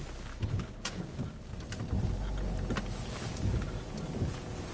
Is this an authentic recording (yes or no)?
yes